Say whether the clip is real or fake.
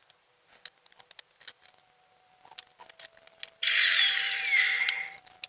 real